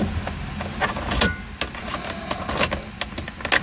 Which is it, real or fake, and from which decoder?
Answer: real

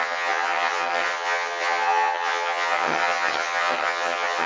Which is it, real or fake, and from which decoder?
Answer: fake, vocoder, HiFi-GAN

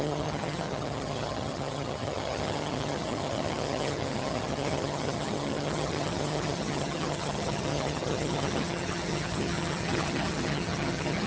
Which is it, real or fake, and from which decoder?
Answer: fake, vocoder, HiFi-GAN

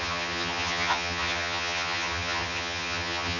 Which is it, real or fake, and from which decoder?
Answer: fake, vocoder, HiFi-GAN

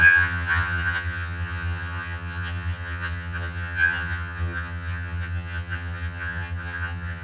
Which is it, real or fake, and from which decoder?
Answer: fake, vocoder, HiFi-GAN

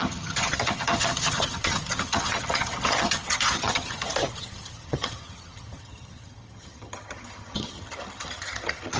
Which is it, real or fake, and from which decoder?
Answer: fake, vocoder, HiFi-GAN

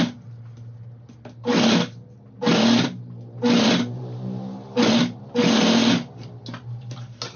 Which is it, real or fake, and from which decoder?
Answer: real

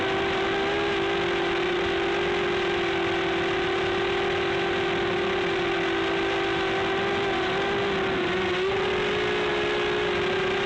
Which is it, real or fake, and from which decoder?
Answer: real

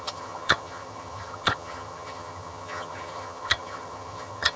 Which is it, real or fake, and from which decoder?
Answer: fake, vocoder, HiFi-GAN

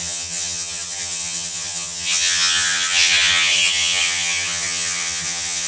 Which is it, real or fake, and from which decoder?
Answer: fake, vocoder, HiFi-GAN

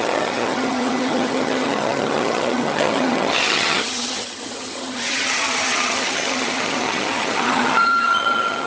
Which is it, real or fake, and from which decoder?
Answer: fake, vocoder, HiFi-GAN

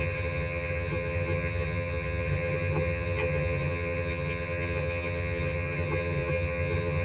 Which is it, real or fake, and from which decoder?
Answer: fake, vocoder, HiFi-GAN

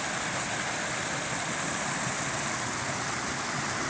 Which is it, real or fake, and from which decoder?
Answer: real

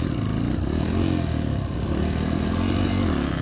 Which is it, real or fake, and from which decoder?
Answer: real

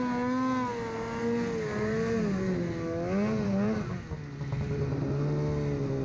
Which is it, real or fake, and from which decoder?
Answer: real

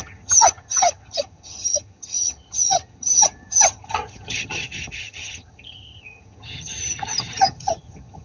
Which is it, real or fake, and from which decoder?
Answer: fake, vocoder, HiFi-GAN